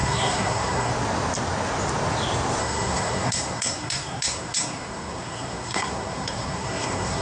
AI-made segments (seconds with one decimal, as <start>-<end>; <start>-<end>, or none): 0.0-0.9; 2.6-7.2